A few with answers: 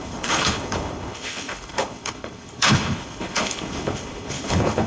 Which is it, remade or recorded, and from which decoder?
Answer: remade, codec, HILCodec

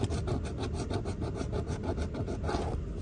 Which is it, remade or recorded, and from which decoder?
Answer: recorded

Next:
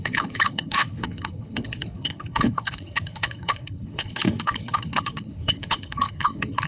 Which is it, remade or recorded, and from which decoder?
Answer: remade, codec, HILCodec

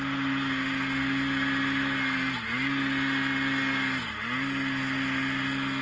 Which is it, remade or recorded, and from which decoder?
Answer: recorded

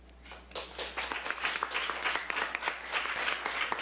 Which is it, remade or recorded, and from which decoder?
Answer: recorded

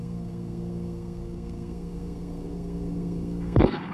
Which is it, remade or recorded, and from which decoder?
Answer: remade, codec, SNAC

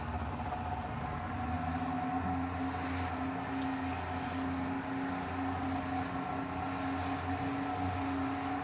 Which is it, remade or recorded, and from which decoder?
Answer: recorded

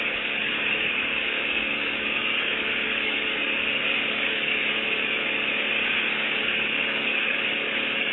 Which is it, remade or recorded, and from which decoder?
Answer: remade, codec, DAC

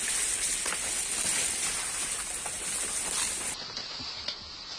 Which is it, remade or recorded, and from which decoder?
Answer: recorded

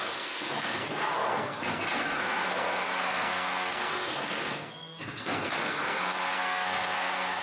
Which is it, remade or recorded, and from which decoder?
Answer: remade, codec, SNAC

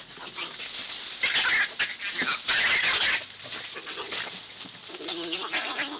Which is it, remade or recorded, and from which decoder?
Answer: recorded